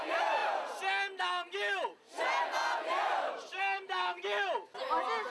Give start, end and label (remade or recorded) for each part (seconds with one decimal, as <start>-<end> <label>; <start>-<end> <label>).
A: 0.0-5.3 recorded